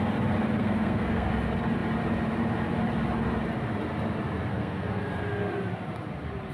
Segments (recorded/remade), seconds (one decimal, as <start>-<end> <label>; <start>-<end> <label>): 0.0-0.6 recorded; 0.6-1.3 remade; 1.3-4.5 recorded; 4.5-5.1 remade; 5.1-6.5 recorded